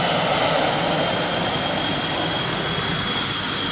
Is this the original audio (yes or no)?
yes